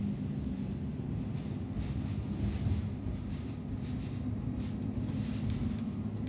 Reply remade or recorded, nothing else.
recorded